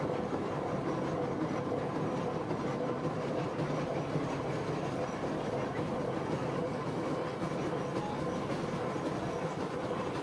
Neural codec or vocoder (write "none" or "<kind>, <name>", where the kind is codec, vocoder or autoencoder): none